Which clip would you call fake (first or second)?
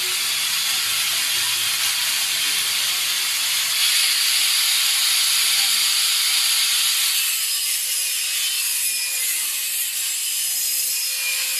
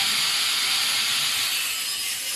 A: first